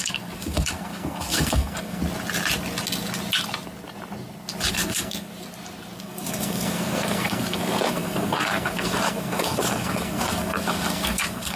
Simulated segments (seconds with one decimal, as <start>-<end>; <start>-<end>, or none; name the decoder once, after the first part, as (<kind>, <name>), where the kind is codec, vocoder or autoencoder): 0.0-2.0 (codec, SNAC); 4.7-5.3; 6.0-11.6